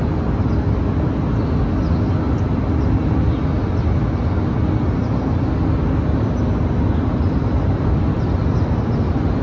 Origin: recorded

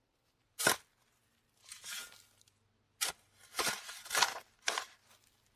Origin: recorded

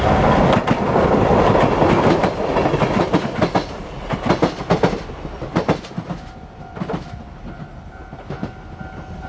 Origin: recorded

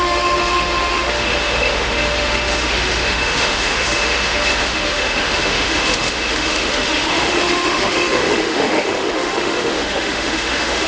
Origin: remade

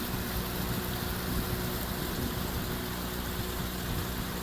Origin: recorded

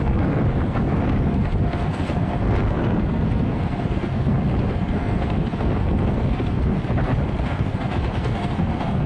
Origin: remade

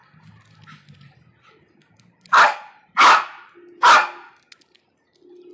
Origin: recorded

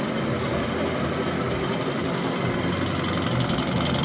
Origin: recorded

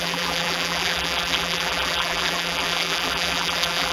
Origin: remade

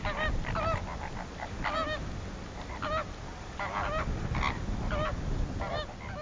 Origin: recorded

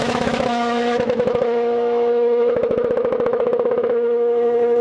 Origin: remade